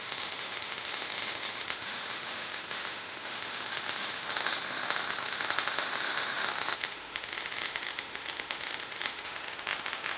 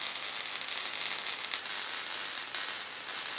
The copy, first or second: first